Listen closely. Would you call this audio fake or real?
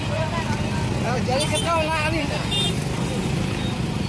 real